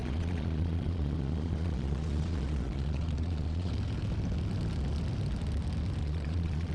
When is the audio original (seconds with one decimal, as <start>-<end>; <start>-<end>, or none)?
3.7-6.0